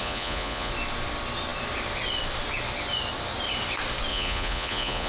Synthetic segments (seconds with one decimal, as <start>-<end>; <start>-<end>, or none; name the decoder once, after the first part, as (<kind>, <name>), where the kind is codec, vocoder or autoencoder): 0.0-0.7 (vocoder, Vocos); 4.1-5.1